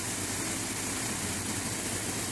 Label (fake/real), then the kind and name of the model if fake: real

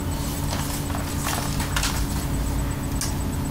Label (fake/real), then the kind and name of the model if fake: real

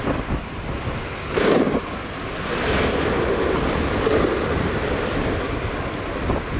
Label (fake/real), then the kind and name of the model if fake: fake, vocoder, BigVGAN v2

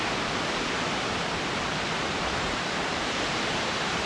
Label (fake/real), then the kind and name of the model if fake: fake, vocoder, BigVGAN v2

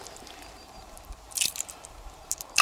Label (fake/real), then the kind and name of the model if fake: fake, vocoder, BigVGAN v2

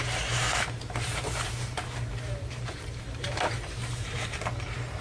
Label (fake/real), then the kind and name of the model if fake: fake, vocoder, BigVGAN v2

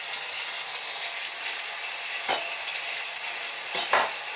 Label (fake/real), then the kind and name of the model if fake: real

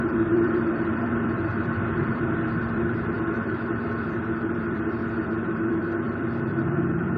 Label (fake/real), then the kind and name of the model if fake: fake, vocoder, BigVGAN v2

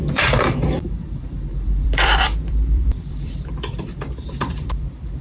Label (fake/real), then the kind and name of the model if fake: fake, vocoder, BigVGAN v2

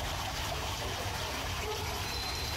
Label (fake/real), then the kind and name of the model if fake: fake, vocoder, BigVGAN v2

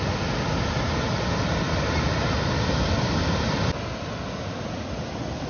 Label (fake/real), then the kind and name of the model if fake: real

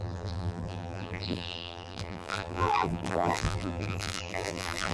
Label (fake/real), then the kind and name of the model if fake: fake, vocoder, BigVGAN v2